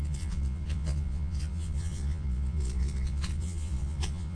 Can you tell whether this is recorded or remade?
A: remade